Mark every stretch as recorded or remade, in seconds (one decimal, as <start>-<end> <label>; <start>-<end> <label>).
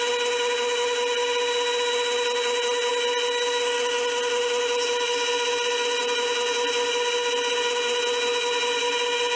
0.0-9.4 recorded